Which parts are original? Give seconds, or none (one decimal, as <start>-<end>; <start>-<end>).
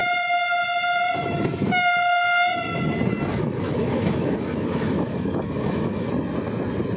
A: 0.0-3.3; 6.1-7.0